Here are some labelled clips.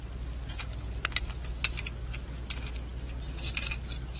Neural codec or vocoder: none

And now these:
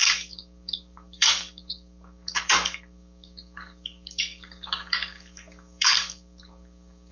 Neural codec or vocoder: codec, DAC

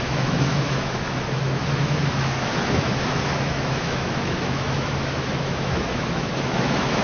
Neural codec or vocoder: autoencoder, DAC-VAE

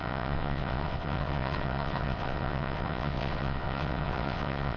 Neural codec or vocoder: vocoder, WaveNeXt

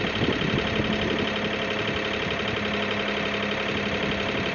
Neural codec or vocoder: none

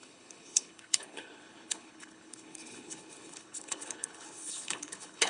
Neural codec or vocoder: codec, HILCodec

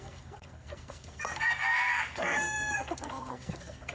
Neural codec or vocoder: codec, SNAC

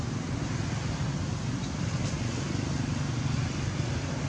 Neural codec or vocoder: none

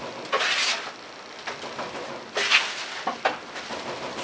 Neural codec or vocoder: none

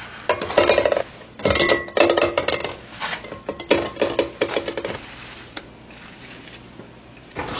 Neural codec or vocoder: none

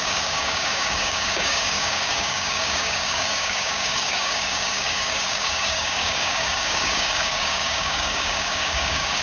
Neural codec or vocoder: codec, DAC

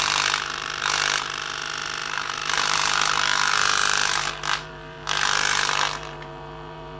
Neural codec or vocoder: vocoder, BigVGAN v2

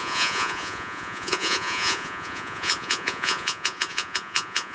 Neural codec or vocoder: vocoder, Vocos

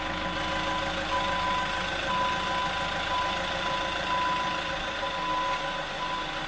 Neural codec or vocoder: none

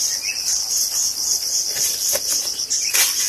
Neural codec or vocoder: none